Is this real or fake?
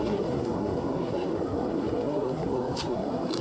fake